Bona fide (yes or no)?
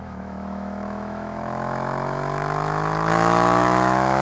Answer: no